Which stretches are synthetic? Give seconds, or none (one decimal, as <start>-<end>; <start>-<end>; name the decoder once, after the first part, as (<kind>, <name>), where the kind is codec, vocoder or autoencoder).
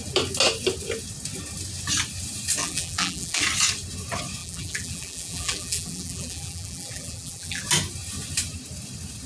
2.6-3.4 (vocoder, BigVGAN v2); 4.4-7.6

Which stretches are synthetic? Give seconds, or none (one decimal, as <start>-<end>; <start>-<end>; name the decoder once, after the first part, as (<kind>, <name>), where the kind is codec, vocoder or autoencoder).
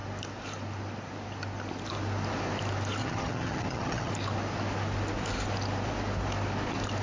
3.0-4.1 (vocoder, HiFi-GAN)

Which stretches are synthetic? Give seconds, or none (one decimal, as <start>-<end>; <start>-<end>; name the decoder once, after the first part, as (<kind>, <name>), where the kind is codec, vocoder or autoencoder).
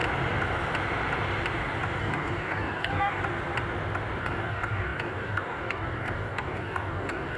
2.0-3.2 (codec, DAC); 4.2-7.4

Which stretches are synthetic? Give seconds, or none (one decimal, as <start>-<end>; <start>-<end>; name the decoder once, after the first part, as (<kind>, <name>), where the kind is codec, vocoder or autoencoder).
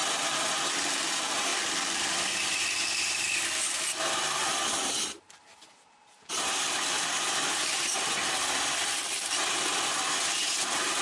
0.7-9.0 (vocoder, BigVGAN v2); 9.7-11.0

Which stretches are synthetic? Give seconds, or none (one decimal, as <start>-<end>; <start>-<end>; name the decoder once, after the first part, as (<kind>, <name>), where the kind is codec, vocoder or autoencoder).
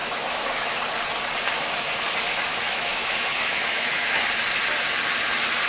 0.0-0.8 (autoencoder, DAC-VAE); 2.5-4.2